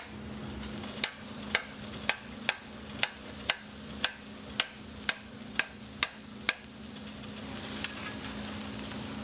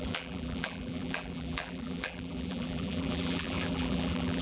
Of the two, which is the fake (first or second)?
second